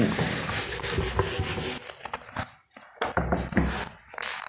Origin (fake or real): real